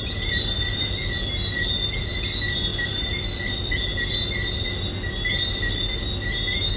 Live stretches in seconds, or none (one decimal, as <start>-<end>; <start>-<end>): 0.0-6.8